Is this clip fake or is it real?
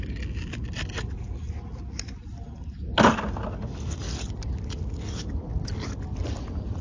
real